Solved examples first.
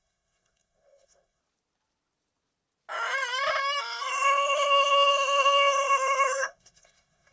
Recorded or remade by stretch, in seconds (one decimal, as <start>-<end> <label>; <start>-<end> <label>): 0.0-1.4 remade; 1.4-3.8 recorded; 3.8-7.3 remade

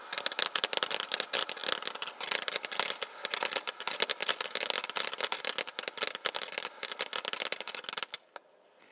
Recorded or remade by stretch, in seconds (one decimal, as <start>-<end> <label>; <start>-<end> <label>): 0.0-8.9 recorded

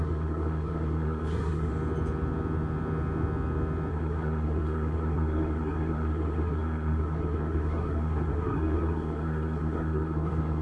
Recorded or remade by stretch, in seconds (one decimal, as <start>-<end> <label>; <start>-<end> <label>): 0.0-1.7 remade; 1.7-3.9 recorded; 3.9-10.6 remade

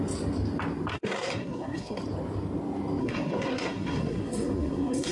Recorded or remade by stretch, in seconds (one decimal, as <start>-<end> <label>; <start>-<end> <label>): 0.0-0.9 recorded; 0.9-2.0 remade; 2.0-3.0 recorded; 3.0-5.1 remade

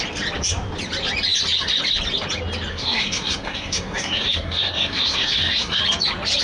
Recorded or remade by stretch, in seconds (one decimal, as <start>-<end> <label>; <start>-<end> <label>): 0.0-2.7 recorded; 2.7-5.8 remade; 5.8-6.4 recorded